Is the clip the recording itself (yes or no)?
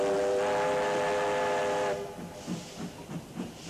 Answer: yes